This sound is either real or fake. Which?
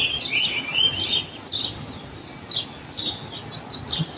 real